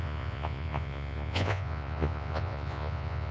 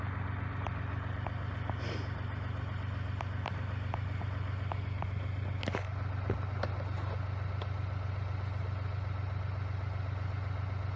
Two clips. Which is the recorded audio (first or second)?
second